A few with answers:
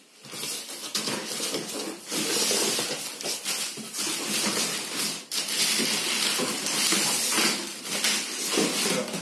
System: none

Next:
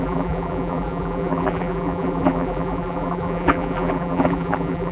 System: vocoder, BigVGAN v2